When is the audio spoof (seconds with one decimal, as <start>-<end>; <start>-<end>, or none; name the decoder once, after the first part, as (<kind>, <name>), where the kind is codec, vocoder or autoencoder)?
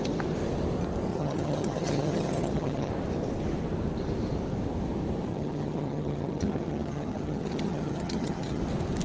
1.1-2.9 (vocoder, HiFi-GAN); 5.3-8.6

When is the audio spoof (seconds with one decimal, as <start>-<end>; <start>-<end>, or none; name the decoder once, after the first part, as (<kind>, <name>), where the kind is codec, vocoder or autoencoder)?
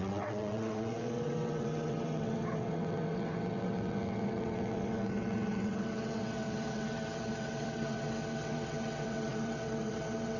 0.0-10.4 (vocoder, WaveNeXt)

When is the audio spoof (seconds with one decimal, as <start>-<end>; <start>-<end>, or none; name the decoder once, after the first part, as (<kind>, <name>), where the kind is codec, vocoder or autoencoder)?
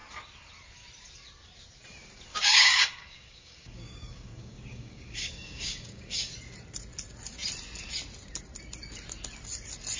2.3-6.3 (codec, DAC)